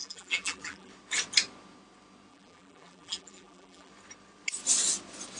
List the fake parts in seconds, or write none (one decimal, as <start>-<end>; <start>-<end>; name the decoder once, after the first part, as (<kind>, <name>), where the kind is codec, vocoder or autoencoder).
0.0-0.9 (vocoder, BigVGAN v2); 2.3-3.9